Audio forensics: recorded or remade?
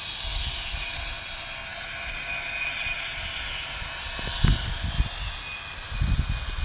recorded